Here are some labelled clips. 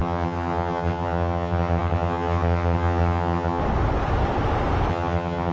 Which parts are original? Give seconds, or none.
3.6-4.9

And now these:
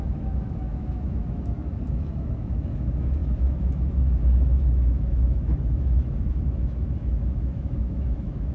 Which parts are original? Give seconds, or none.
none

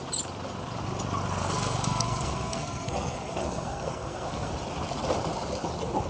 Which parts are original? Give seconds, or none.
0.0-1.4; 4.5-6.1

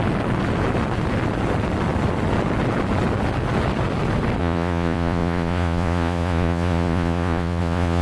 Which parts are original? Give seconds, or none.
0.0-4.4

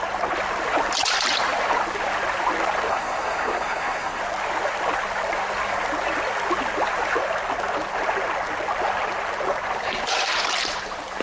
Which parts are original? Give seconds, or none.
0.0-2.9; 4.2-11.2

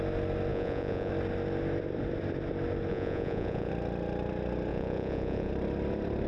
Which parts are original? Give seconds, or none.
0.0-0.5; 1.1-2.9; 3.7-4.7; 5.5-6.3